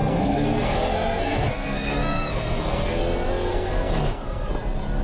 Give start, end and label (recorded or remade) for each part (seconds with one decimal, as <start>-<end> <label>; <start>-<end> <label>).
0.0-3.0 remade; 3.0-3.5 recorded; 3.5-4.5 remade; 4.5-5.0 recorded